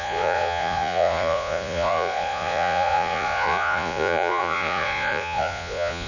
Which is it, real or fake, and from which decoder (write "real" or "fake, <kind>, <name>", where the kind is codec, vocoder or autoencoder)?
fake, vocoder, Vocos